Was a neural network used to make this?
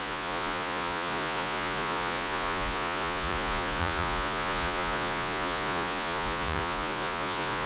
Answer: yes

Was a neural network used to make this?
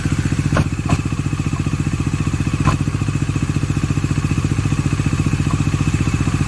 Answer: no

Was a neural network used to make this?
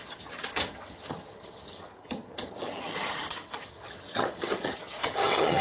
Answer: yes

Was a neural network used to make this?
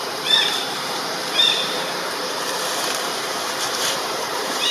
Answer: yes